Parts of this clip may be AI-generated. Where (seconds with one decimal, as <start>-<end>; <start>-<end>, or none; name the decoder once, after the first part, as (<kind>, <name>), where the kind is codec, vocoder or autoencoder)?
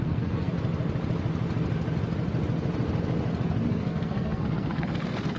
0.0-0.5 (codec, SNAC); 3.7-5.4